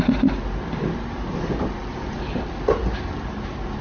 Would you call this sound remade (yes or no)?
no